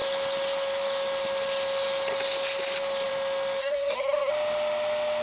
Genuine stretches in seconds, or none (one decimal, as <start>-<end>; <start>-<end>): 0.0-3.6; 4.3-5.2